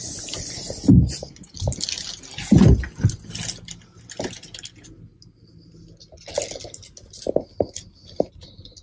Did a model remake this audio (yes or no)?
no